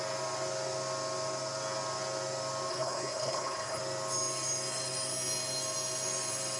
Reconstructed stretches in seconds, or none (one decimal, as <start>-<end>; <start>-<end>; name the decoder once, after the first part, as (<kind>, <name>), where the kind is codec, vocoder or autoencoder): 2.7-3.8 (codec, HILCodec)